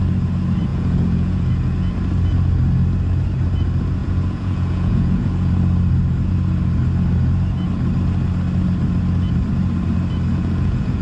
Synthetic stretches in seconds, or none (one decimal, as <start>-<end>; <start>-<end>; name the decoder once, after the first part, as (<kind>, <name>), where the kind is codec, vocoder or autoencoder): 0.7-1.5 (vocoder, Vocos); 4.0-5.5; 10.3-11.0